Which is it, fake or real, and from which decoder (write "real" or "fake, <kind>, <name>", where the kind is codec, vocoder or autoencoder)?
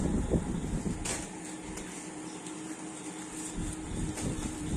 real